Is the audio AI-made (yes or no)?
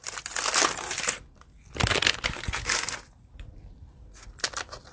no